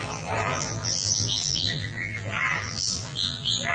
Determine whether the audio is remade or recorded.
remade